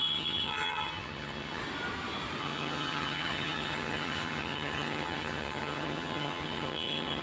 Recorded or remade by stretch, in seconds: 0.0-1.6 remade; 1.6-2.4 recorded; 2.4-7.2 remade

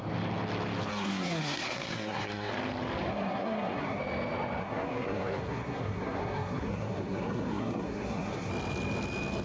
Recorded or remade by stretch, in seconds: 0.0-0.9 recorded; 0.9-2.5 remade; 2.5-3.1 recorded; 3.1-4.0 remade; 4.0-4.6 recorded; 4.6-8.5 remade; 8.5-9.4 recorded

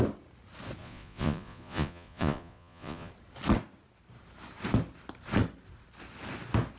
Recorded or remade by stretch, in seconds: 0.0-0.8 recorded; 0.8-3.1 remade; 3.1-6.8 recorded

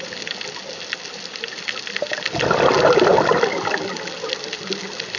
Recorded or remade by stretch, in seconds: 0.0-5.2 recorded

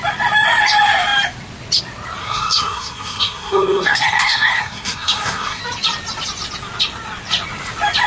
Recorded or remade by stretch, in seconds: 0.0-2.2 recorded; 2.2-5.6 remade; 5.6-8.1 recorded

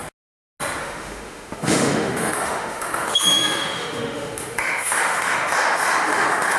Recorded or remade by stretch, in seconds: 0.0-0.8 recorded; 0.8-6.6 remade

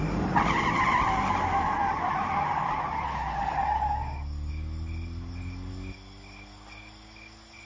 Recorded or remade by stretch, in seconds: 0.0-7.7 recorded